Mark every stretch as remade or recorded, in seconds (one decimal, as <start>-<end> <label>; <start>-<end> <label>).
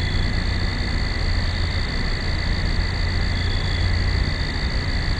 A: 0.0-5.2 recorded